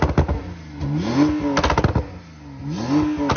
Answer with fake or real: real